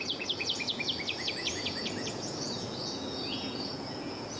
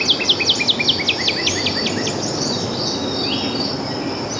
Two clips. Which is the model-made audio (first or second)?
first